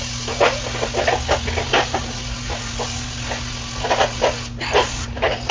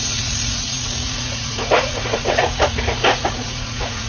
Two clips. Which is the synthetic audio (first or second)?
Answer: second